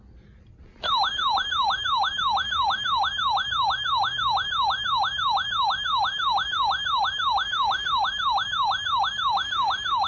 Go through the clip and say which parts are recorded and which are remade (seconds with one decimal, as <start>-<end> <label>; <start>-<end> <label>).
0.0-10.1 recorded